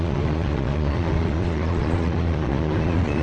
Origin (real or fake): fake